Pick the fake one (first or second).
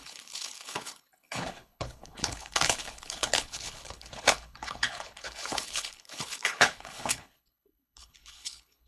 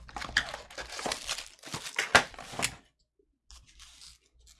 first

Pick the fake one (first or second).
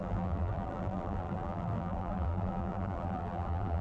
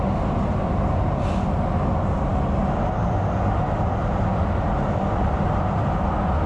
first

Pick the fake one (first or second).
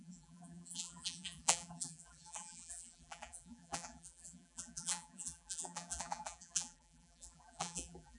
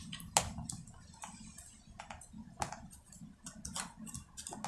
first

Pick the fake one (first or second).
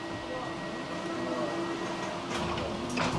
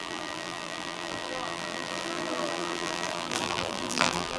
second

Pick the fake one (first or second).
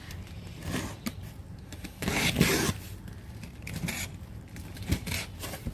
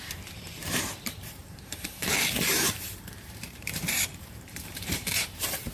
second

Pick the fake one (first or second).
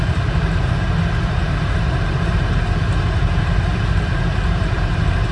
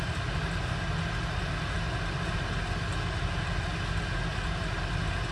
first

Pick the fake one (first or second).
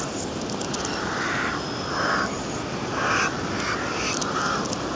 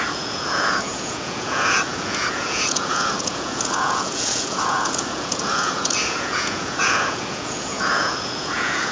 second